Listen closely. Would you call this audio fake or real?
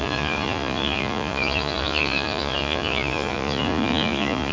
fake